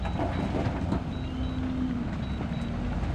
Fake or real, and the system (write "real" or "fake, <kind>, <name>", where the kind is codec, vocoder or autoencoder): real